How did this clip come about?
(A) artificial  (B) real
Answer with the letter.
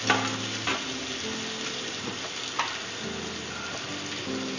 B